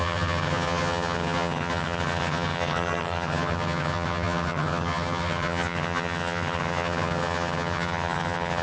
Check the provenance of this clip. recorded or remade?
remade